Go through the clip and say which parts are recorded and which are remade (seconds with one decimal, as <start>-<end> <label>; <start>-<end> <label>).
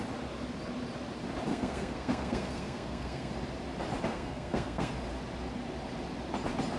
0.0-1.5 recorded; 1.5-3.3 remade; 3.3-4.1 recorded; 4.1-4.9 remade; 4.9-6.8 recorded